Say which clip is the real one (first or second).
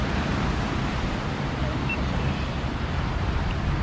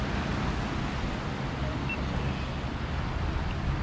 second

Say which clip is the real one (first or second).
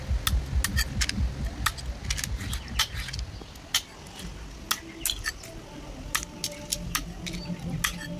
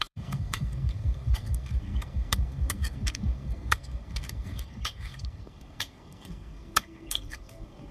first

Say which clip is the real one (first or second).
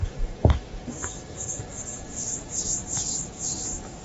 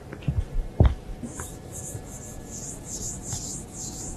second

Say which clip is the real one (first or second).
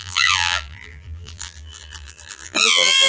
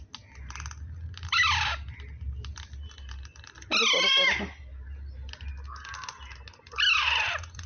second